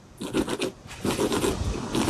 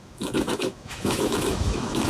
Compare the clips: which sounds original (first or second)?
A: first